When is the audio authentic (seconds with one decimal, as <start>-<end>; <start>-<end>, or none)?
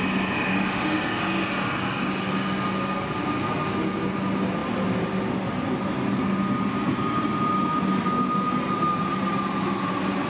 0.0-10.3